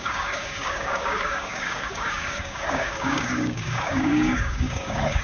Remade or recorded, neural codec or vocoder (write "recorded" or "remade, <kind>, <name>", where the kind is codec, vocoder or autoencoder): remade, codec, DAC